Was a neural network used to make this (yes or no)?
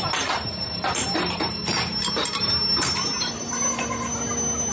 no